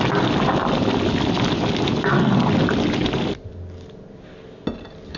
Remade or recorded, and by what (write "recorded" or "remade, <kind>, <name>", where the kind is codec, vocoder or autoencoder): recorded